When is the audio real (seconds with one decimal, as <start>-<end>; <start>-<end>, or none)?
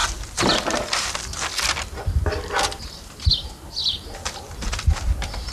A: 0.0-3.8